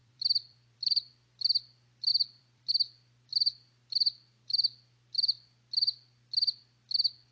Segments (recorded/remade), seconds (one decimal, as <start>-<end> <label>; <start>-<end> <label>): 0.0-1.1 remade; 1.1-2.1 recorded; 2.1-2.7 remade; 2.7-7.3 recorded